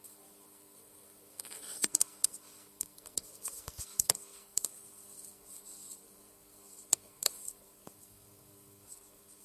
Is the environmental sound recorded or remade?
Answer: remade